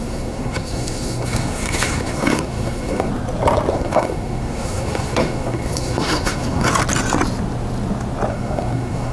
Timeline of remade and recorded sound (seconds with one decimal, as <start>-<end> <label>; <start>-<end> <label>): 0.0-3.1 remade; 3.1-3.7 recorded; 3.7-6.7 remade; 6.7-8.3 recorded; 8.3-9.1 remade